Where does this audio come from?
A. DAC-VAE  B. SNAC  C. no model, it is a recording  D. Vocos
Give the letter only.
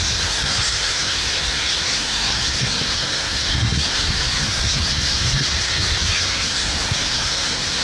B